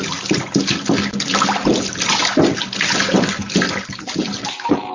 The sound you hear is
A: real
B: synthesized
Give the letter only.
A